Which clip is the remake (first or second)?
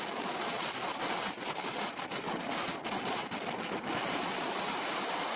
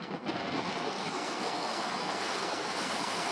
second